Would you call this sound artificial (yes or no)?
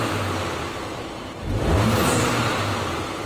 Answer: yes